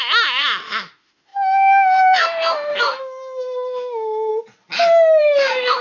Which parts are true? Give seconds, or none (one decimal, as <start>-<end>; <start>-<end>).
4.3-5.2